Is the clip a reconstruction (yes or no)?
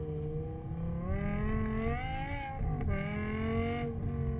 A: no